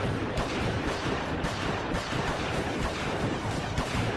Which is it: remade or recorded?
remade